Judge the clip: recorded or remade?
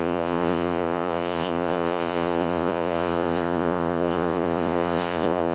remade